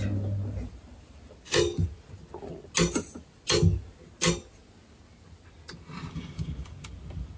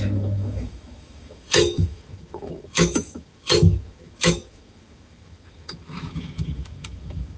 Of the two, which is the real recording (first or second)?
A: first